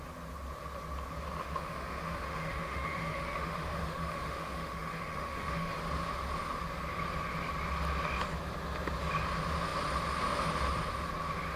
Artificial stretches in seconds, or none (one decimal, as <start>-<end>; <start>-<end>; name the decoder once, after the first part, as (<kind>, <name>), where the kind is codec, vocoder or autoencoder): 1.4-5.8 (autoencoder, DAC-VAE)